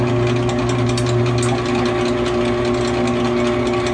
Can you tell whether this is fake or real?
real